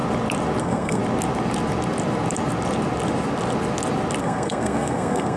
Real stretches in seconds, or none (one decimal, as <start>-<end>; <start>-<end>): 0.0-0.6; 1.0-4.2